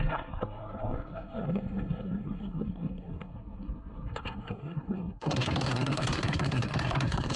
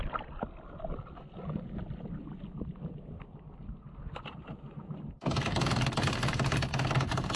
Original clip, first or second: second